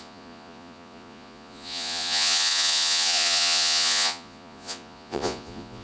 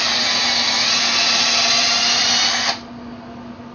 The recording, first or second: second